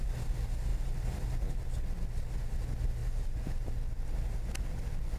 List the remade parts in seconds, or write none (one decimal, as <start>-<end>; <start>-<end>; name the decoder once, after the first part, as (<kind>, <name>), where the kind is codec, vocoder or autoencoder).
0.7-1.5 (vocoder, BigVGAN v2)